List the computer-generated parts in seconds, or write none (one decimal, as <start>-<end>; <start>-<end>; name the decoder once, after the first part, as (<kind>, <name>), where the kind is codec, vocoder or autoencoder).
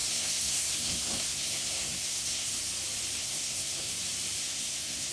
0.0-2.5 (codec, SNAC); 3.2-3.9; 4.4-5.1